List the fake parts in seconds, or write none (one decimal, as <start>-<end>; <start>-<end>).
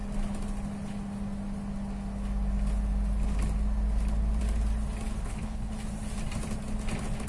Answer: 5.2-5.7